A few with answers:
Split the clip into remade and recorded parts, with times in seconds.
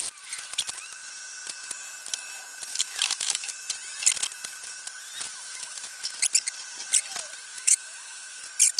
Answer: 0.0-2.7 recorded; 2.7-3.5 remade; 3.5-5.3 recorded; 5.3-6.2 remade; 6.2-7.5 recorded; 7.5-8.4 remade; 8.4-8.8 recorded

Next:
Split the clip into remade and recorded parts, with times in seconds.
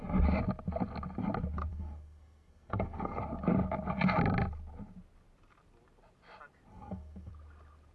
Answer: 0.0-1.7 recorded; 1.7-3.2 remade; 3.2-6.7 recorded; 6.7-7.3 remade; 7.3-7.9 recorded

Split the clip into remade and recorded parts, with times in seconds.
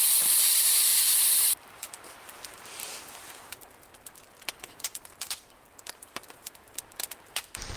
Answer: 0.0-7.8 remade